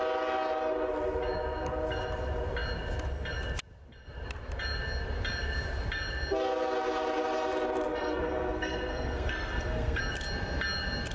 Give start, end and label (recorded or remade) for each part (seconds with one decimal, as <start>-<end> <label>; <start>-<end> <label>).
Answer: 0.0-7.9 recorded; 7.9-10.0 remade; 10.0-11.1 recorded